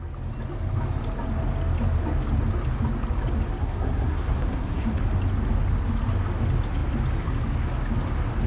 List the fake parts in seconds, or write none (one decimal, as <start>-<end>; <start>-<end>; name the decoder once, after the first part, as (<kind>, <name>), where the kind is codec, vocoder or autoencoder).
3.6-5.0 (codec, SNAC)